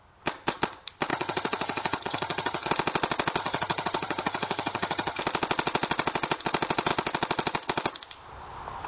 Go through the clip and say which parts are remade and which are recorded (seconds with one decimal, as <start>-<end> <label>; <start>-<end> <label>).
0.0-1.1 recorded; 1.1-2.7 remade; 2.7-3.4 recorded; 3.4-5.2 remade; 5.2-8.9 recorded